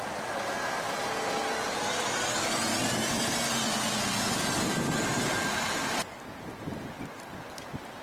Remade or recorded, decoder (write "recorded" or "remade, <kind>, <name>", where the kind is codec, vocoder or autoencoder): recorded